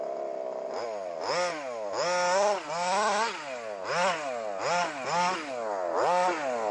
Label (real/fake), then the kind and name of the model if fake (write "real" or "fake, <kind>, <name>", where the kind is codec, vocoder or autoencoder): real